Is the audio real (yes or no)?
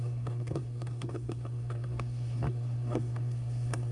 no